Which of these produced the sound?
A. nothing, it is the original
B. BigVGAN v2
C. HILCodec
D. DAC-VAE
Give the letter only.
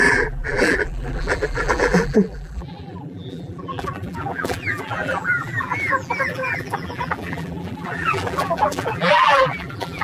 B